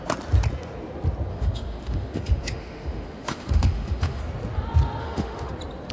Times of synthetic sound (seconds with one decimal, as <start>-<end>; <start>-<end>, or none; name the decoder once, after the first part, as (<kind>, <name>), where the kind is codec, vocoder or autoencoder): 1.3-4.2 (autoencoder, DAC-VAE); 5.0-5.5

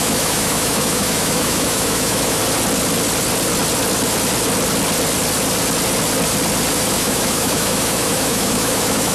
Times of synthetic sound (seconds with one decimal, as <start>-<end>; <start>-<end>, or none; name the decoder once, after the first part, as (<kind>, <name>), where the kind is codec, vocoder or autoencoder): 0.0-2.4 (autoencoder, DAC-VAE); 6.9-9.1